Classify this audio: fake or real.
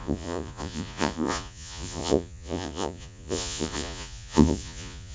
fake